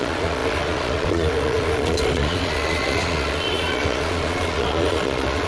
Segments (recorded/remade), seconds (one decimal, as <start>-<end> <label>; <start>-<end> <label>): 0.0-5.5 remade